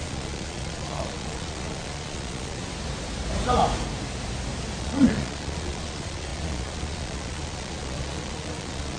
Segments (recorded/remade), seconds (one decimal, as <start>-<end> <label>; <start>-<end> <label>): 0.0-2.6 remade; 2.6-4.8 recorded; 4.8-9.0 remade